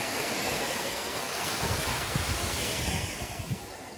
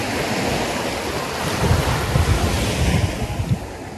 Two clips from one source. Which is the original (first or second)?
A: second